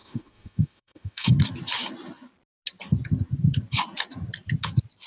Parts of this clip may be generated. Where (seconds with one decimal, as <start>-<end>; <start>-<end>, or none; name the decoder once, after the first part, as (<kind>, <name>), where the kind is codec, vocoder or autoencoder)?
0.0-1.3 (autoencoder, DAC-VAE)